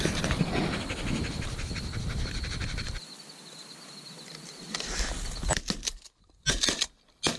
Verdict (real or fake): real